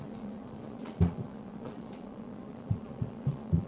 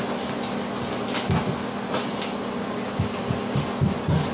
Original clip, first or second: second